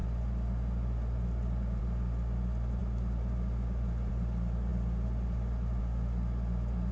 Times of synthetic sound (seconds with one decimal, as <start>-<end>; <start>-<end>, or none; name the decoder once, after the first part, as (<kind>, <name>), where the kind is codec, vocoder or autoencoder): none